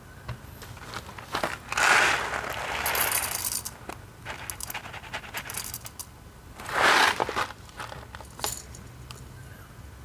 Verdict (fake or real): real